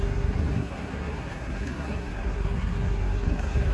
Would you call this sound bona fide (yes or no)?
no